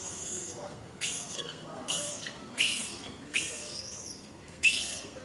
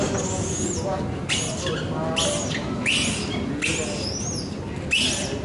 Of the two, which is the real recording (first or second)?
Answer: second